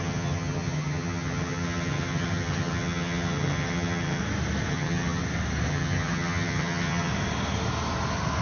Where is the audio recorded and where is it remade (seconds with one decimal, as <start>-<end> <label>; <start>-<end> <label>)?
0.0-4.2 remade; 4.2-4.7 recorded; 4.7-5.2 remade; 5.2-5.7 recorded; 5.7-7.1 remade; 7.1-8.4 recorded